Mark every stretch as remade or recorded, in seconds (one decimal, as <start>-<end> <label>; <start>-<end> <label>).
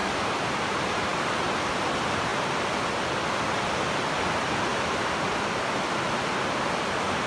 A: 0.0-1.4 remade; 1.4-7.3 recorded